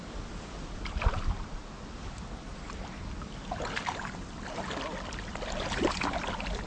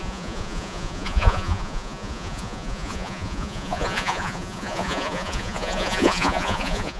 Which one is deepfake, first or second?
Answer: second